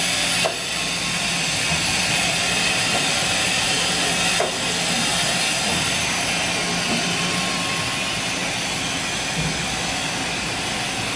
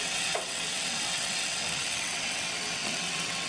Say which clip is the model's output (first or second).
second